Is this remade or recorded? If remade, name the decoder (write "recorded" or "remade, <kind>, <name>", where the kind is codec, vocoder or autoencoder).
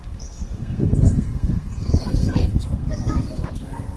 remade, codec, SNAC